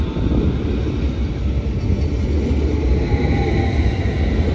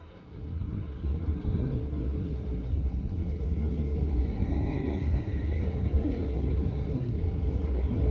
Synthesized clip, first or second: second